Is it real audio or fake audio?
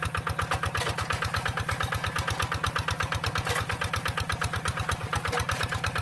real